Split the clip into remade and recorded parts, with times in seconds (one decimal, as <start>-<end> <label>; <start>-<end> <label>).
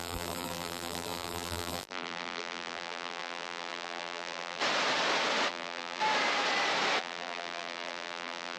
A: 0.0-4.6 remade; 4.6-5.5 recorded; 5.5-6.0 remade; 6.0-7.0 recorded; 7.0-8.6 remade